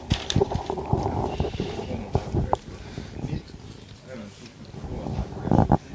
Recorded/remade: recorded